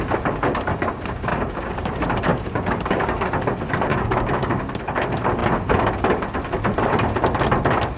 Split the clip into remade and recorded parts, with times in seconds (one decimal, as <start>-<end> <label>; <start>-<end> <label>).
0.0-1.3 recorded; 1.3-1.9 remade; 1.9-2.3 recorded; 2.3-3.3 remade; 3.3-3.9 recorded; 3.9-4.6 remade; 4.6-8.0 recorded